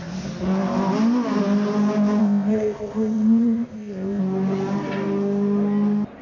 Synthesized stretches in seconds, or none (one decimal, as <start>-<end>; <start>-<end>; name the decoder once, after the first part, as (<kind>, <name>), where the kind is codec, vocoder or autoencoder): 2.2-4.2 (codec, ZipCodec)

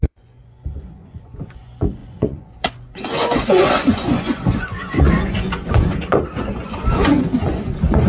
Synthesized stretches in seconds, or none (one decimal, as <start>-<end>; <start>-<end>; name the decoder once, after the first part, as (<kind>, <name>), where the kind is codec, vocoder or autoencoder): 0.0-8.1 (vocoder, Vocos)